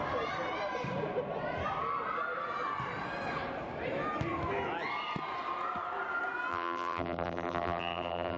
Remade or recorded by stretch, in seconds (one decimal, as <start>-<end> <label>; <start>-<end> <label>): 0.0-6.5 recorded; 6.5-8.4 remade